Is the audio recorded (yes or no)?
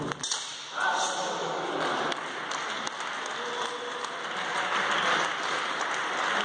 yes